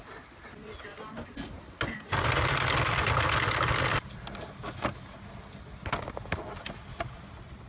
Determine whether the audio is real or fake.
real